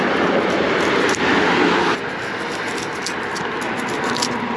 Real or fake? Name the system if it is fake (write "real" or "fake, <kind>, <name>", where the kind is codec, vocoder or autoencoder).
real